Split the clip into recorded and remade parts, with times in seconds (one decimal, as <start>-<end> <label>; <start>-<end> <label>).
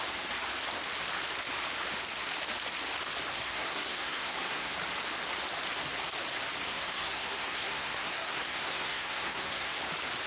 0.0-3.3 recorded; 3.3-4.7 remade; 4.7-6.7 recorded; 6.7-9.8 remade; 9.8-10.3 recorded